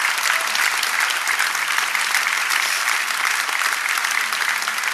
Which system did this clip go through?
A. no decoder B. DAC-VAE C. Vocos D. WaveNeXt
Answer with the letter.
A